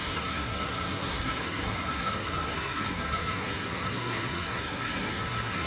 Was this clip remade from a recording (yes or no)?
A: yes